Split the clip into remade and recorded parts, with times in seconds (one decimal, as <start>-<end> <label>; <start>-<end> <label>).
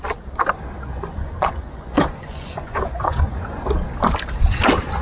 0.0-0.9 recorded; 0.9-3.6 remade; 3.6-5.0 recorded